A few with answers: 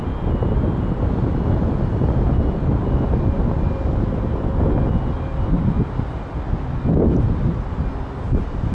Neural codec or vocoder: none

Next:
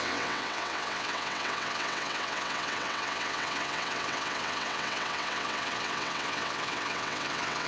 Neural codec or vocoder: vocoder, WaveNeXt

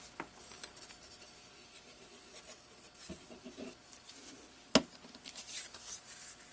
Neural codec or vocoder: none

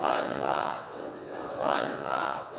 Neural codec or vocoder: vocoder, WaveNeXt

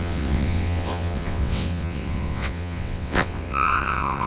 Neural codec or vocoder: vocoder, WaveNeXt